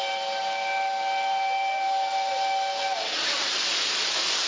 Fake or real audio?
real